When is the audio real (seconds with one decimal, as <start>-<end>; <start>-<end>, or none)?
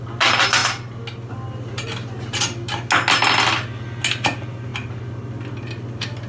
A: 0.0-6.3